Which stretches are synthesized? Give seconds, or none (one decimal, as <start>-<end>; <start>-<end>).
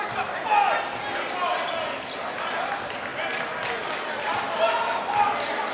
none